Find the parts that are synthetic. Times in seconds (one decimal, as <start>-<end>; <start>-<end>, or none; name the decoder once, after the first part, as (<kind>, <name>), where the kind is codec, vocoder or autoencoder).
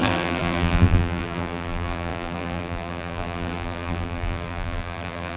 0.0-5.4 (vocoder, BigVGAN v2)